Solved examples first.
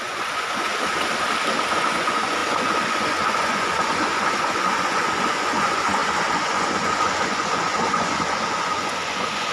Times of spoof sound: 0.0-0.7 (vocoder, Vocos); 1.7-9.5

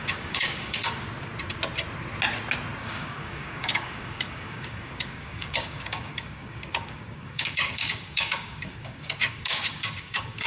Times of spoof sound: 0.0-0.8 (codec, DAC); 2.8-10.5

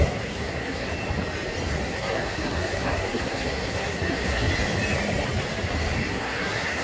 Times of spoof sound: 0.0-0.9 (codec, SNAC); 1.9-4.5; 6.1-6.8

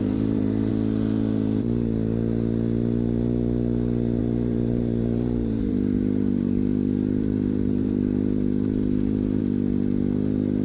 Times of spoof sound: 0.0-0.7 (vocoder, BigVGAN v2); 4.2-9.4

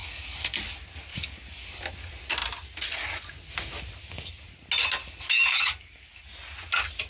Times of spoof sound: 0.0-0.6 (codec, DAC); 1.1-1.8; 5.0-6.2